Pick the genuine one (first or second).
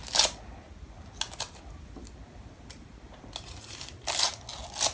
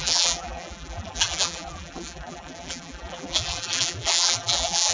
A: first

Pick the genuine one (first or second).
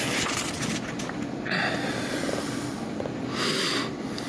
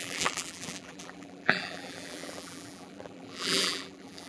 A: first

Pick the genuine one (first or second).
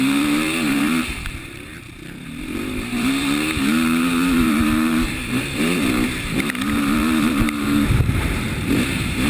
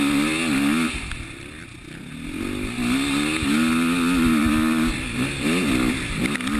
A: second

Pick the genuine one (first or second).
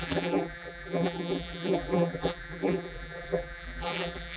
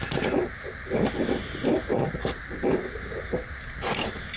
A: second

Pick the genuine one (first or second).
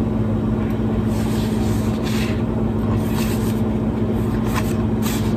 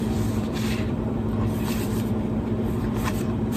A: first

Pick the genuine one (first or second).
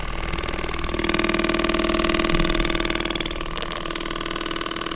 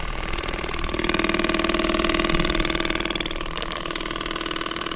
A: first